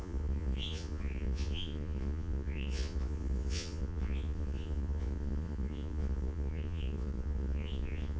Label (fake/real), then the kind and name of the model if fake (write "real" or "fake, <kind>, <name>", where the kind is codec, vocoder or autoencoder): fake, vocoder, Vocos